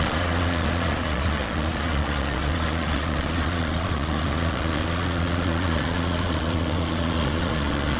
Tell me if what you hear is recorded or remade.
remade